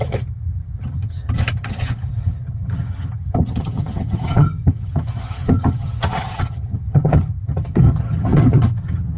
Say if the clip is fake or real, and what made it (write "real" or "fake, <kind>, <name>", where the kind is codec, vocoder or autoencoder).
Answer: fake, vocoder, HiFi-GAN